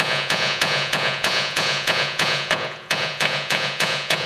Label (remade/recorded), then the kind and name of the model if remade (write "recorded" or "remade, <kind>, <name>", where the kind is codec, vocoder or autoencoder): remade, vocoder, Vocos